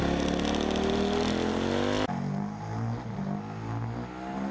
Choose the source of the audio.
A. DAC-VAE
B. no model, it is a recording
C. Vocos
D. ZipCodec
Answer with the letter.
B